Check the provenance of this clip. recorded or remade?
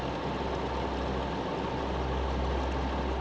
recorded